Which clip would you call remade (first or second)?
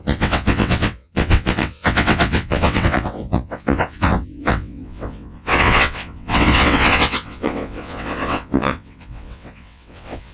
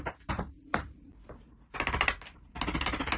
first